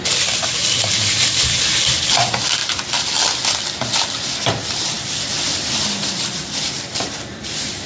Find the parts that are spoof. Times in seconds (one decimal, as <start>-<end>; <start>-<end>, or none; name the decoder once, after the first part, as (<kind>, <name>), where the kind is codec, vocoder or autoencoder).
0.0-2.6 (vocoder, BigVGAN v2); 4.5-7.9